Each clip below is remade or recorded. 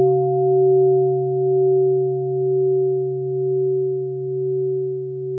recorded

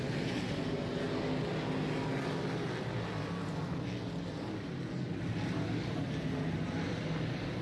recorded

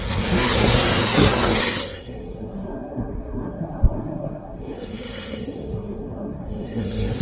remade